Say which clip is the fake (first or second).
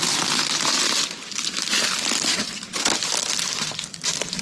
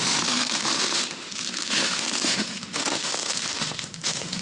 second